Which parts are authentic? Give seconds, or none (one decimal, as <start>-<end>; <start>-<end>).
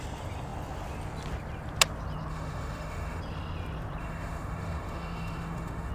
0.0-2.3; 3.2-4.0